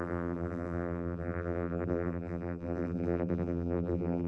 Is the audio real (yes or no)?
no